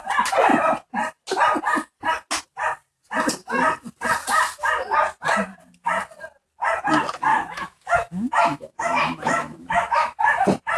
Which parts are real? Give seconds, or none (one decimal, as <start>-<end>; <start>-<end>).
0.0-7.3; 10.2-10.8